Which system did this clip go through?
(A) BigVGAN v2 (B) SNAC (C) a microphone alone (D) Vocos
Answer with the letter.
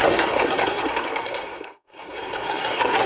B